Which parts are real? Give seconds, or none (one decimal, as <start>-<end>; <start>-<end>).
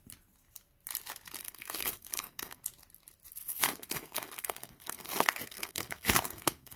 0.0-1.4; 2.6-3.3